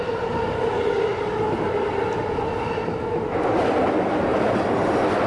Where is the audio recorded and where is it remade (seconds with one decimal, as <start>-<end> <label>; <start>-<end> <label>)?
0.0-5.3 recorded